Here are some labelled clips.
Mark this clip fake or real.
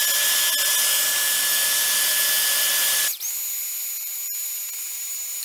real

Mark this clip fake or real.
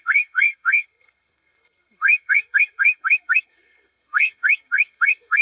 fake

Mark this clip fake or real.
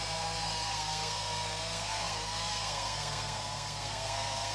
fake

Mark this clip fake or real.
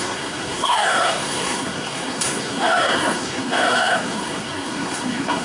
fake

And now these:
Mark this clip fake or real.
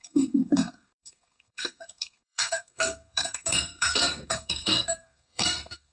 fake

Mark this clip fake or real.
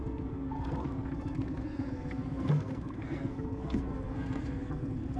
fake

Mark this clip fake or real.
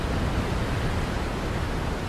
real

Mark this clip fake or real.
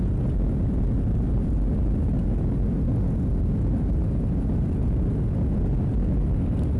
real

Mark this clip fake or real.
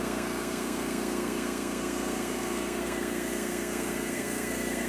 fake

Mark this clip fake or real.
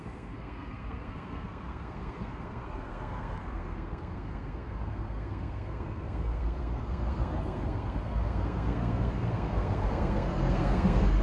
fake